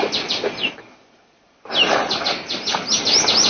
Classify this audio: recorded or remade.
recorded